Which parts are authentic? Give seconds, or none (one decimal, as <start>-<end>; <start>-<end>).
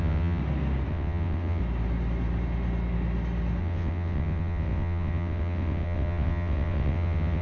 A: 0.4-0.9; 1.6-3.6